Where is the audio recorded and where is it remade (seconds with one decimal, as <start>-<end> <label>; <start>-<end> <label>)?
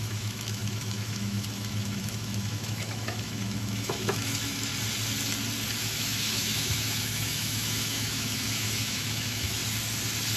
0.0-4.7 remade; 4.7-5.8 recorded; 5.8-9.6 remade; 9.6-10.4 recorded